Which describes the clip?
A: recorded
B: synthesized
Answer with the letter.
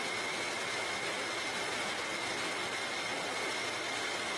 A